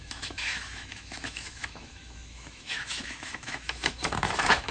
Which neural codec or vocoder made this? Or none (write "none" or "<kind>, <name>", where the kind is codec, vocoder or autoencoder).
autoencoder, DAC-VAE